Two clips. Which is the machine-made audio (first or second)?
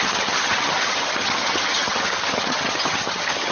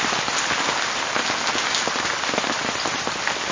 first